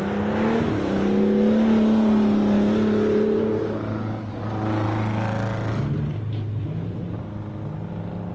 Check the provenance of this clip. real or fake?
real